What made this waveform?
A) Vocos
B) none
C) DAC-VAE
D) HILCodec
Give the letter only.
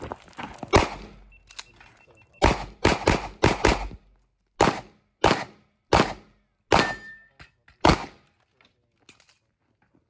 B